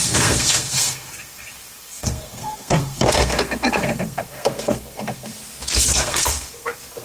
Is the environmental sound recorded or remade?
remade